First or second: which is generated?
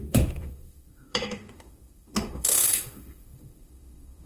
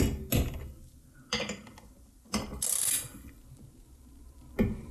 first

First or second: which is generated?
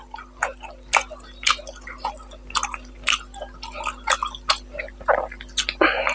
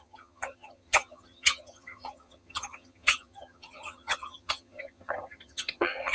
second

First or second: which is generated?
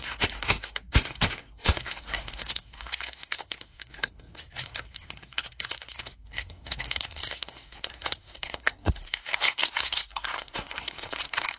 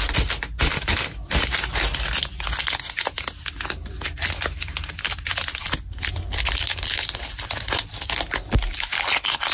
first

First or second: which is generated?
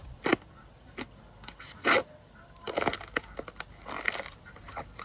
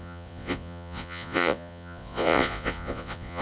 second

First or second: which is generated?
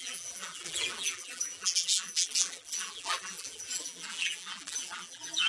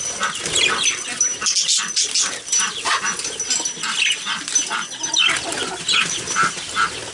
first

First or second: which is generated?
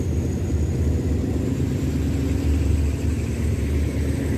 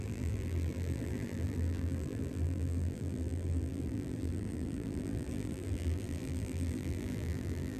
second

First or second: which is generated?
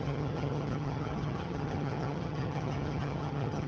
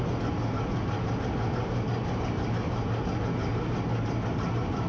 first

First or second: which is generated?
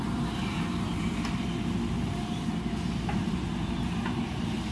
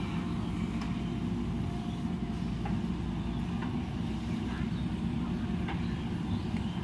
first